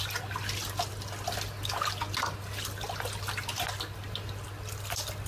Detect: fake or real real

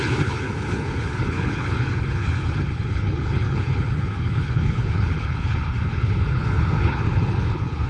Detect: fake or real fake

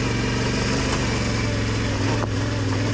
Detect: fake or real real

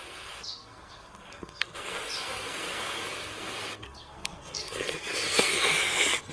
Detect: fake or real fake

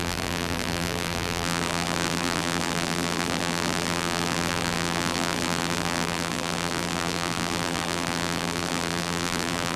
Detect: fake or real fake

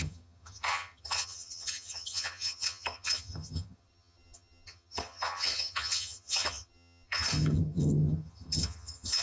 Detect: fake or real fake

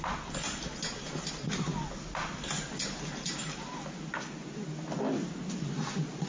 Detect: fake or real real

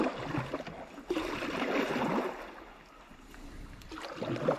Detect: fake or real real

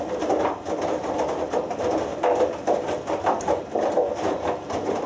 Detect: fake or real real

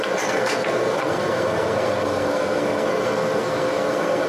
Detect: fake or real fake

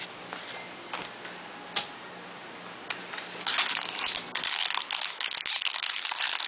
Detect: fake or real real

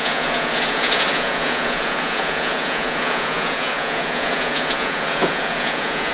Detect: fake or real fake